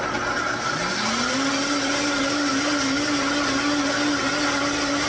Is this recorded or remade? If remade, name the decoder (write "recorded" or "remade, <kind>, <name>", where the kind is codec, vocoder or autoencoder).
recorded